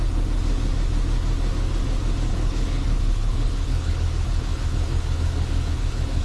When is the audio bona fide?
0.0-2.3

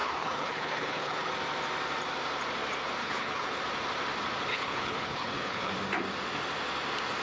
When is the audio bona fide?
1.3-3.0; 3.6-4.5; 5.7-7.2

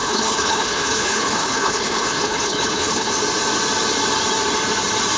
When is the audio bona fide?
3.1-5.2

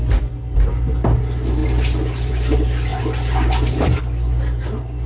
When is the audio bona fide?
0.0-5.1

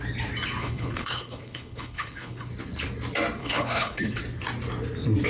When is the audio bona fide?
0.0-0.6; 2.5-3.4; 4.2-5.3

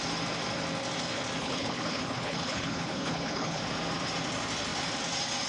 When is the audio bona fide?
0.0-1.4; 3.6-5.5

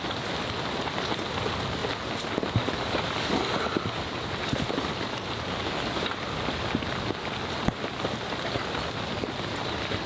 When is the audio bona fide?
0.0-10.1